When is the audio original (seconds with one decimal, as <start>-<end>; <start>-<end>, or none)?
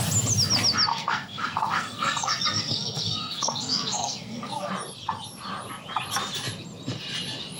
0.0-0.9; 4.7-7.6